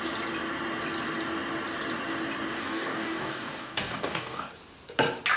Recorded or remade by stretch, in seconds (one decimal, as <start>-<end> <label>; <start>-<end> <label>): 0.0-2.6 recorded; 2.6-4.5 remade; 4.5-5.4 recorded

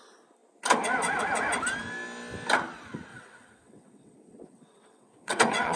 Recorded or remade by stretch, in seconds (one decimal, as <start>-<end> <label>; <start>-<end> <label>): 0.0-3.1 recorded; 3.1-5.8 remade

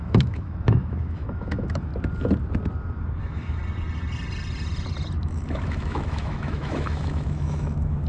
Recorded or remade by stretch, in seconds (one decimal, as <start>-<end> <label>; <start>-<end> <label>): 0.0-1.9 remade; 1.9-3.2 recorded; 3.2-3.6 remade; 3.6-5.2 recorded; 5.2-8.1 remade

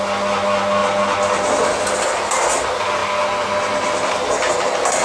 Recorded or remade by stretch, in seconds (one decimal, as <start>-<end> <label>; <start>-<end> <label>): 0.0-5.0 recorded

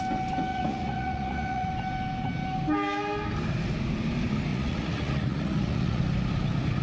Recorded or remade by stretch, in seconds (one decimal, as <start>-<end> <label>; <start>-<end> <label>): 0.0-0.5 recorded; 0.5-1.7 remade; 1.7-4.5 recorded; 4.5-6.0 remade; 6.0-6.8 recorded